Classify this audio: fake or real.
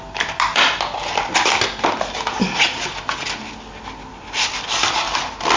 real